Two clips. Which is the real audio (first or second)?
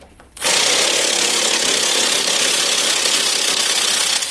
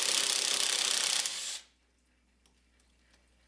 second